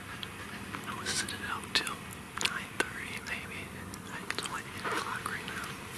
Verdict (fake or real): real